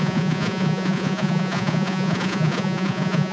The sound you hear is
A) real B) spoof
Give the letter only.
B